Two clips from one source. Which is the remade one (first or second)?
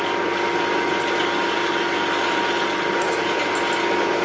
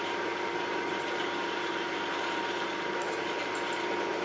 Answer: second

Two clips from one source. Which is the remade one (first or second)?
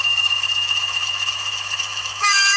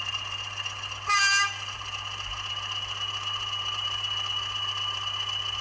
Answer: first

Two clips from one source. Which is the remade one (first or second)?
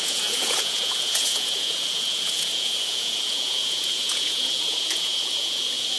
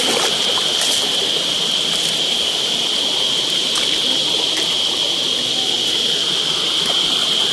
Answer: first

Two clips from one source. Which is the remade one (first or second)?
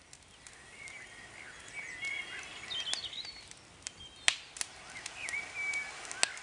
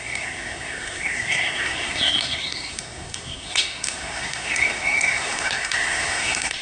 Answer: second